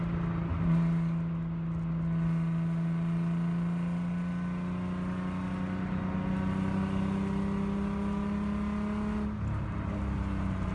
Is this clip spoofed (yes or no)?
no